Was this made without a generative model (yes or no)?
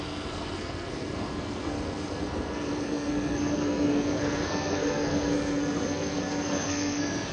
no